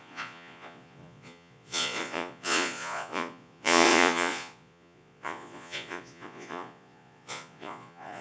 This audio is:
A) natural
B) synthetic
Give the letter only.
B